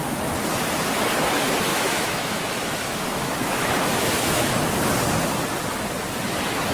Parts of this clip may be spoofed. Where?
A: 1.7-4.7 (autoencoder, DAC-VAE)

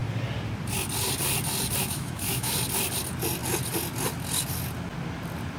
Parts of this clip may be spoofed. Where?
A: 1.8-2.5 (autoencoder, DAC-VAE)

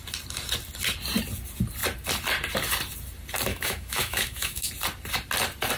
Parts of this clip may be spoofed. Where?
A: 3.5-4.7 (autoencoder, DAC-VAE)

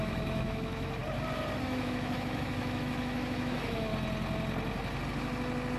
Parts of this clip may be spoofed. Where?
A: 0.0-1.0 (autoencoder, DAC-VAE); 1.6-3.9

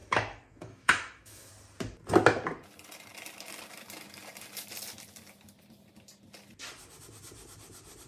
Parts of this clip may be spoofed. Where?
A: 0.0-1.5 (autoencoder, DAC-VAE)

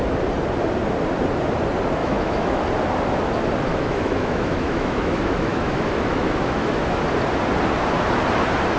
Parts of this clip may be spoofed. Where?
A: 2.0-2.6 (autoencoder, DAC-VAE); 3.7-7.0

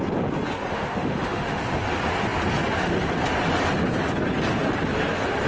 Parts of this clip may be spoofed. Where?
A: 0.7-1.6 (autoencoder, DAC-VAE)